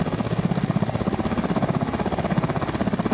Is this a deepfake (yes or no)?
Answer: no